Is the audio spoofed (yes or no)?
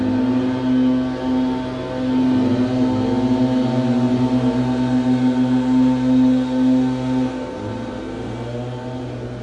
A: no